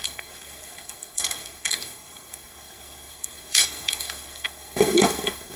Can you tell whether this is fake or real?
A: fake